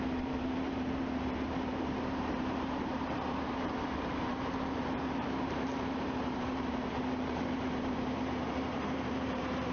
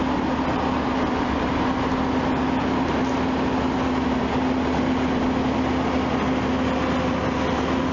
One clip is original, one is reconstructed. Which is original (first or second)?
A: second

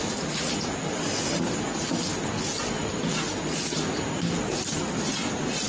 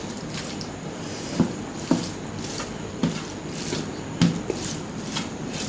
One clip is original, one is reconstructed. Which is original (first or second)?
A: first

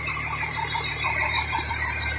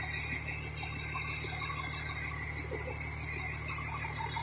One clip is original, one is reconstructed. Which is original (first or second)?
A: second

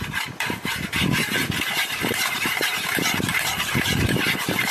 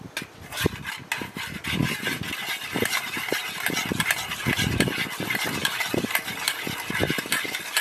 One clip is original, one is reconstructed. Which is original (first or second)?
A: second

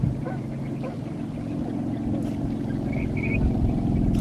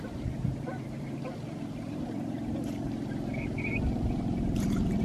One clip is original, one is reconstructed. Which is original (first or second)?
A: first